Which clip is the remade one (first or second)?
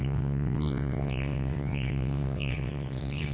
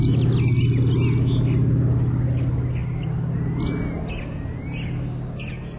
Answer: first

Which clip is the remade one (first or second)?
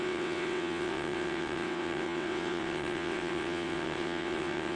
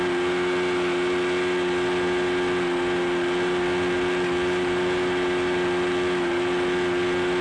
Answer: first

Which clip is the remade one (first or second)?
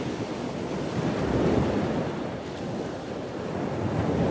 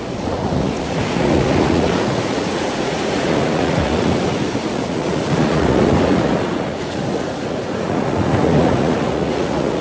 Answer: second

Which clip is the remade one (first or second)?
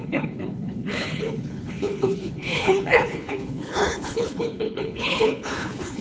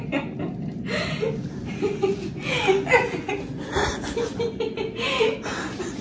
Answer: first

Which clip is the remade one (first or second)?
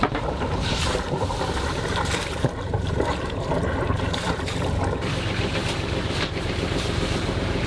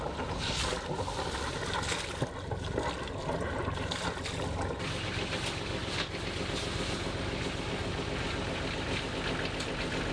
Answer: first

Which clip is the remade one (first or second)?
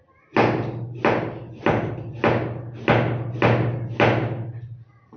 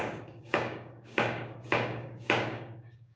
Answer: second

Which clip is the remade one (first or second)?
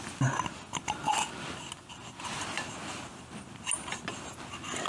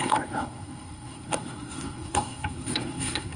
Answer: second